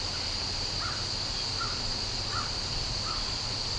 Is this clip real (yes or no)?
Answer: yes